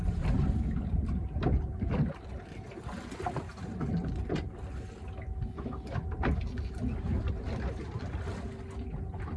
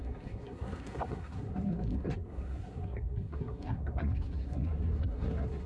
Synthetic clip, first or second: second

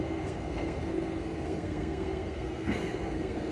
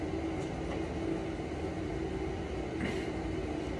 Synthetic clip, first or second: first